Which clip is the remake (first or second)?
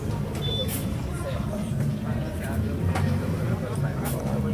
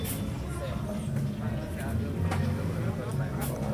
first